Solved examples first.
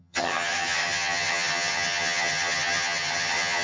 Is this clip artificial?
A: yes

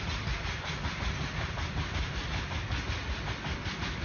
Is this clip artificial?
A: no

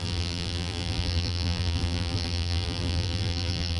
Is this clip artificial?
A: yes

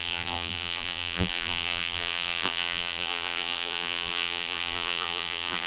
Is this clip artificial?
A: yes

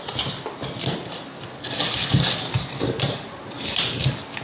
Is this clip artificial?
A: no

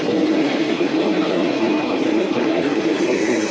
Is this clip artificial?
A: yes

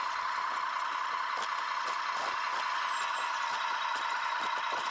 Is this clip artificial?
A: no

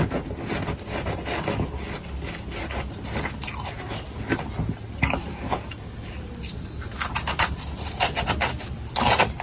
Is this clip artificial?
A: no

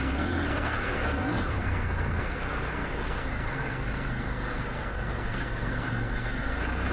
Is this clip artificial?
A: yes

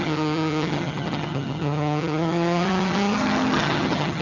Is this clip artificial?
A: yes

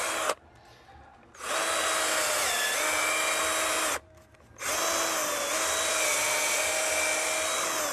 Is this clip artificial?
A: no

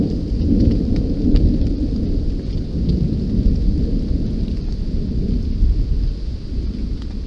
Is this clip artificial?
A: no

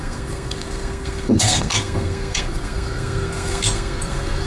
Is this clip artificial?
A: yes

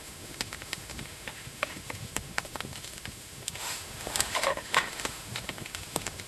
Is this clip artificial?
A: yes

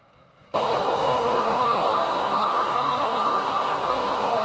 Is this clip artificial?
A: yes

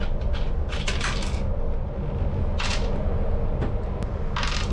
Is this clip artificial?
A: no